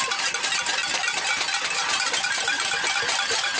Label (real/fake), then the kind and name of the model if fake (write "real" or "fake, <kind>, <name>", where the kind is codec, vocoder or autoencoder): real